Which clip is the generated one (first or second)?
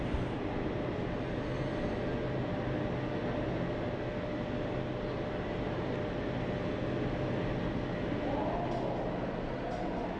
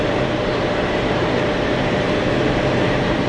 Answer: second